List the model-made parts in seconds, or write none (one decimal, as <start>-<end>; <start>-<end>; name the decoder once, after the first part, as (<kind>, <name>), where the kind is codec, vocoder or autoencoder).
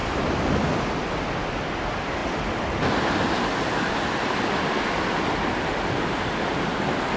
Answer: none